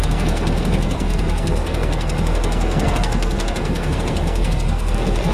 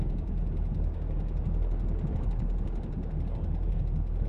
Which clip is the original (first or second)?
second